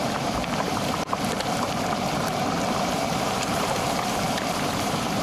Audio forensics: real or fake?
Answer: fake